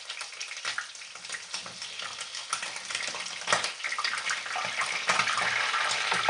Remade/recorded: recorded